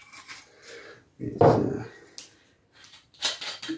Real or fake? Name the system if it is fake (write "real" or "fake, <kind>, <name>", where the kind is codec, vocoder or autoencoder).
real